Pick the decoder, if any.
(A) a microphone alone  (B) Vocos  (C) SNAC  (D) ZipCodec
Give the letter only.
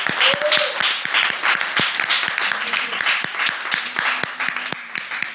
A